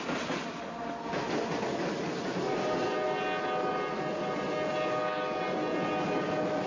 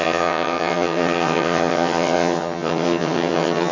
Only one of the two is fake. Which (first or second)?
second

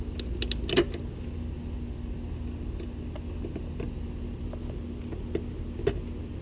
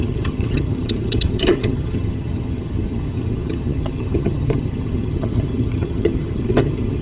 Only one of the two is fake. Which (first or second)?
second